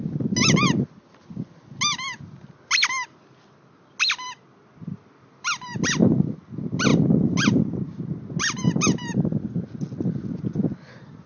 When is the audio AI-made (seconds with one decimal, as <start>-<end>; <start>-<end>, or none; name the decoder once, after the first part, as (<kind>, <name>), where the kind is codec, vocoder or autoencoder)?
none